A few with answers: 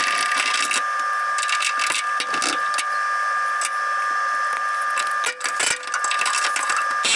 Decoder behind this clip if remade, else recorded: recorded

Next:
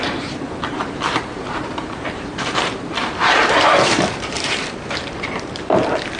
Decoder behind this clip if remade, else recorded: remade, vocoder, BigVGAN v2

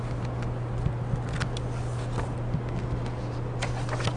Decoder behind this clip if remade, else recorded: recorded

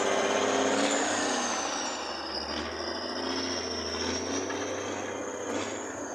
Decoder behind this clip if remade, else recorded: recorded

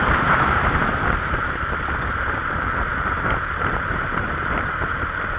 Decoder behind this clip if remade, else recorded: remade, vocoder, BigVGAN v2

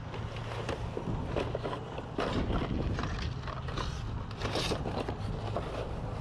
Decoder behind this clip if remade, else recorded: recorded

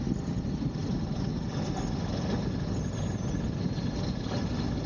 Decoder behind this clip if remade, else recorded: recorded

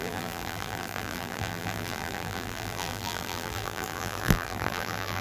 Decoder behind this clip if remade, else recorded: remade, vocoder, BigVGAN v2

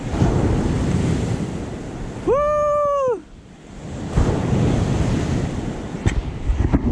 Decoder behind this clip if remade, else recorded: recorded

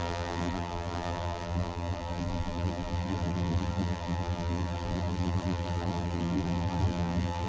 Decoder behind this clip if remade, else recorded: remade, vocoder, BigVGAN v2